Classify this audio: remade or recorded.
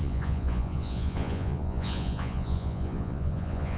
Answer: remade